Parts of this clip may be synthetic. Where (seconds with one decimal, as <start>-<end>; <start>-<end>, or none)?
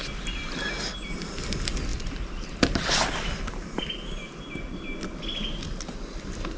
1.9-3.8